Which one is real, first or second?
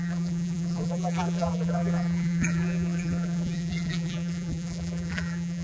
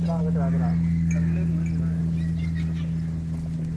second